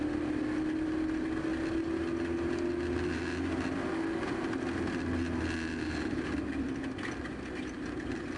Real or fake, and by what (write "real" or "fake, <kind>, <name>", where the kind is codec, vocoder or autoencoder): real